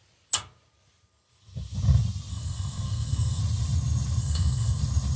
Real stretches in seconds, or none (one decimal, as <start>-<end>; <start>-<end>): 0.0-2.3; 3.4-4.2; 4.8-5.2